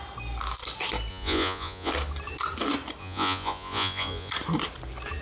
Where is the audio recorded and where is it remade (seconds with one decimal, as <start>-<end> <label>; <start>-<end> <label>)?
0.0-1.1 recorded; 1.1-1.9 remade; 1.9-3.0 recorded; 3.0-4.3 remade; 4.3-5.2 recorded